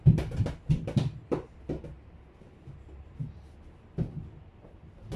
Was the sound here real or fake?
real